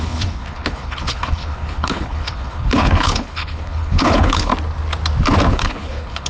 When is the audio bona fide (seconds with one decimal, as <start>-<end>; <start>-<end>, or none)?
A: 4.5-5.5